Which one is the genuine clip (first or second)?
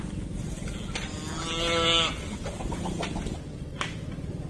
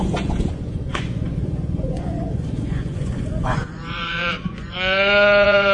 first